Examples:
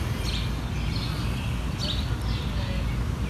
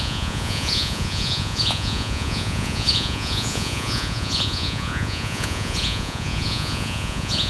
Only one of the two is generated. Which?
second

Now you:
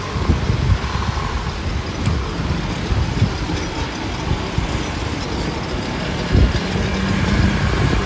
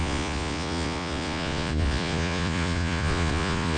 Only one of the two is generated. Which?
second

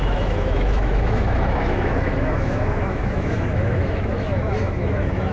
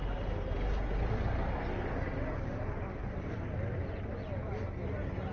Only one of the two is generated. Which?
first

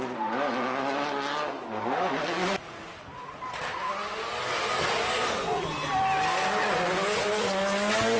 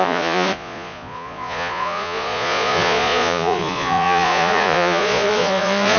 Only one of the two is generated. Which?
second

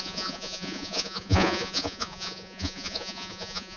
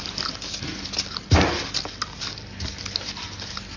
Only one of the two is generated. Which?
first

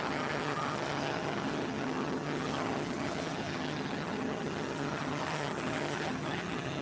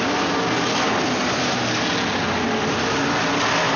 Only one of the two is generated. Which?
first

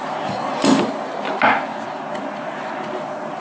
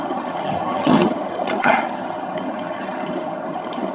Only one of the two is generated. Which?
second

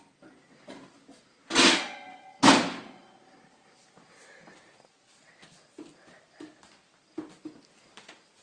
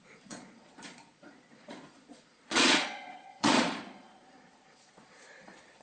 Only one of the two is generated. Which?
second